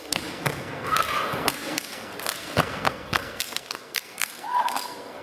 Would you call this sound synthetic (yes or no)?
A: yes